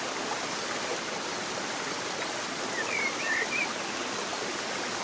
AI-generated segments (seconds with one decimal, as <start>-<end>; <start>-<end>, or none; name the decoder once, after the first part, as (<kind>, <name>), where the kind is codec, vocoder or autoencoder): none